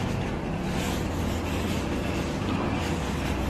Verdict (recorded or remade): recorded